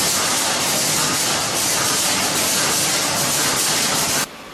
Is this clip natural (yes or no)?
yes